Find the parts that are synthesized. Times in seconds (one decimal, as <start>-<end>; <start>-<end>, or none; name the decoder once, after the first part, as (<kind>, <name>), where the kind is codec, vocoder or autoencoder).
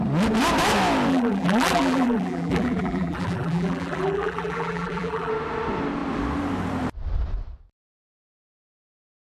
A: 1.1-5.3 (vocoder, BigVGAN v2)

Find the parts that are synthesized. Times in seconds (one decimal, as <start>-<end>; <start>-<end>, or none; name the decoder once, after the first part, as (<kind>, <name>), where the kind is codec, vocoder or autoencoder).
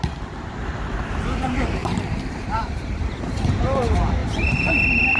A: 1.8-3.8 (vocoder, BigVGAN v2); 4.2-4.7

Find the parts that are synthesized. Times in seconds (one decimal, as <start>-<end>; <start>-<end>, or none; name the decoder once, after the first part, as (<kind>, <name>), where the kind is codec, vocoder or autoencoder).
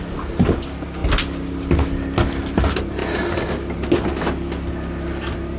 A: none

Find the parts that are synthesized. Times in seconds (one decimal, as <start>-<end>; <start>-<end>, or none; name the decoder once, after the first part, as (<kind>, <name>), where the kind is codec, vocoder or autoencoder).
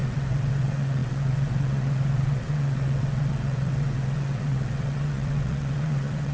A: 0.0-6.3 (vocoder, WaveNeXt)